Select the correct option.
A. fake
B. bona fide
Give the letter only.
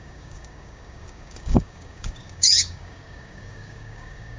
A